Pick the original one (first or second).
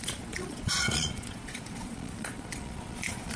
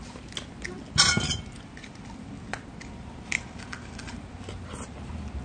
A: second